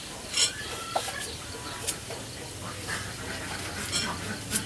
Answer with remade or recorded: remade